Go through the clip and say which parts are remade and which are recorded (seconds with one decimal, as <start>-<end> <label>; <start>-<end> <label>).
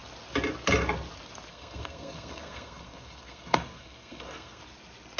0.0-1.5 recorded; 1.5-4.6 remade; 4.6-5.2 recorded